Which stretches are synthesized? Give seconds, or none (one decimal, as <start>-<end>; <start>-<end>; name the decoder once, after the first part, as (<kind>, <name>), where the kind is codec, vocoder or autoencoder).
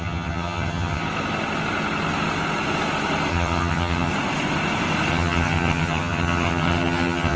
0.0-1.0 (vocoder, HiFi-GAN); 3.3-4.1; 5.1-7.4